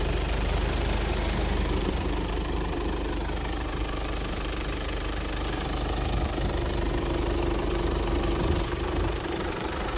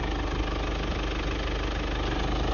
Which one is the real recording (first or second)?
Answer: second